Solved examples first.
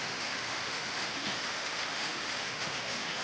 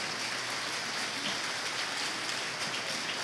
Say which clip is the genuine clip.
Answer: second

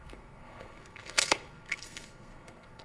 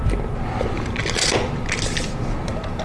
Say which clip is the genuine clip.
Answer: second